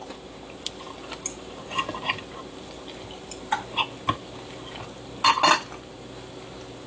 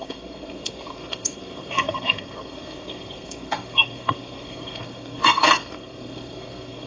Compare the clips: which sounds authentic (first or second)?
first